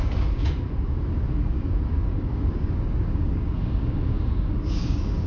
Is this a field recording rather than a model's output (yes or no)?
no